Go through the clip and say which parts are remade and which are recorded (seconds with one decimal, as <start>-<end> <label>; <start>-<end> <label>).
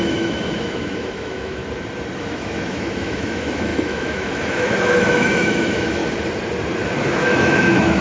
0.0-1.6 remade; 1.6-2.2 recorded; 2.2-6.0 remade; 6.0-7.1 recorded; 7.1-8.0 remade